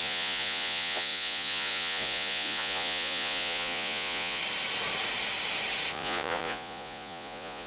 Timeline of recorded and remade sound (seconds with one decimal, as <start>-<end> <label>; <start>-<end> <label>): 0.0-4.4 remade; 4.4-5.9 recorded; 5.9-7.7 remade